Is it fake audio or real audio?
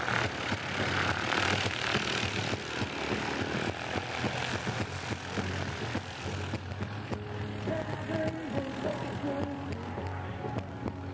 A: real